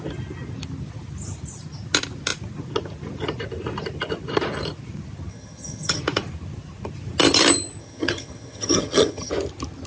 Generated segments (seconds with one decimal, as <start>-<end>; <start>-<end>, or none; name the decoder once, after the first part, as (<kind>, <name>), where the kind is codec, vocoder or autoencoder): 5.3-6.0 (vocoder, HiFi-GAN); 7.8-9.3